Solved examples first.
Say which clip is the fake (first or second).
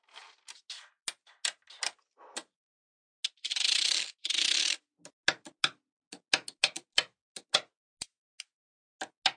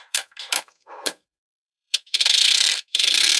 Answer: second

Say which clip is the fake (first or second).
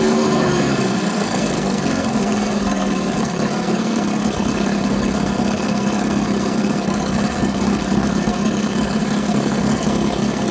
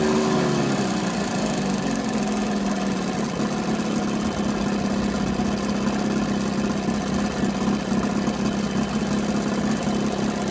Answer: first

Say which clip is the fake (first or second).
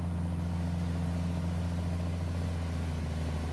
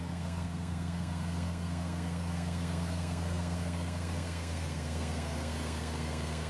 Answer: second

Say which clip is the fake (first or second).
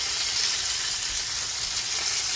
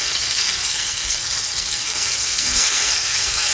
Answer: second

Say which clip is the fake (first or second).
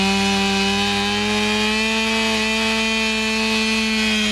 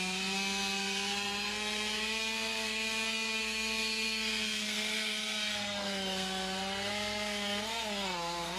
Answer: second